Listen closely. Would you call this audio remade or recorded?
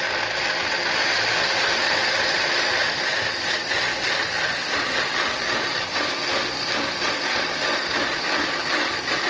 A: recorded